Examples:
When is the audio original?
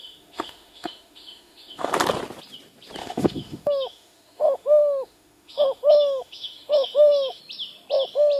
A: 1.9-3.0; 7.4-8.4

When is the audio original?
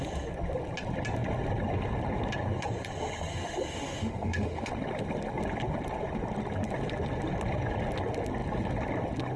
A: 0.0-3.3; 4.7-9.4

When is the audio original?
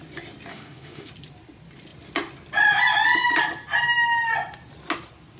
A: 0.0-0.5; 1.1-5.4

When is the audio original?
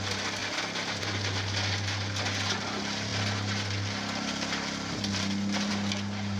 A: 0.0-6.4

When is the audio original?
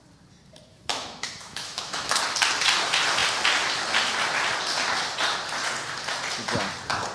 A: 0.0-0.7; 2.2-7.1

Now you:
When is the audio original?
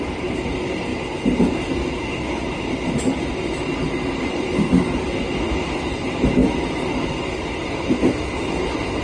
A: 0.0-9.0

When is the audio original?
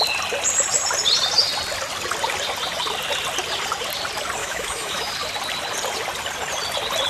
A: 0.0-4.4; 5.1-7.1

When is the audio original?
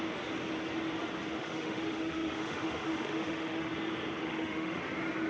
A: 0.0-1.4; 3.7-4.2; 4.8-5.3